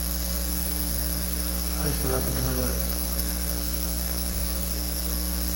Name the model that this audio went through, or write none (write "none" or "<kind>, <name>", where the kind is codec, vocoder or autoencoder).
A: codec, SNAC